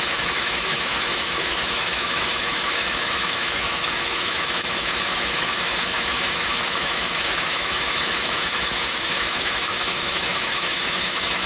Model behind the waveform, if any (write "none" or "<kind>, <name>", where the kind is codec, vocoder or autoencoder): autoencoder, DAC-VAE